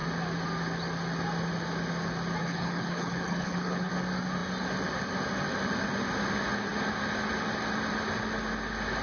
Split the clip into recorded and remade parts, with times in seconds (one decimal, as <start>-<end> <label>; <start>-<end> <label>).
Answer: 0.0-2.4 recorded; 2.4-3.9 remade; 3.9-9.0 recorded